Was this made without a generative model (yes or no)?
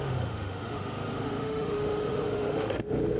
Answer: no